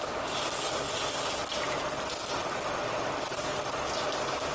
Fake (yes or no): no